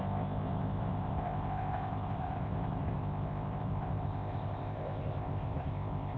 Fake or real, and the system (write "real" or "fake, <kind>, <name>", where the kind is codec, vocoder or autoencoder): fake, codec, ZipCodec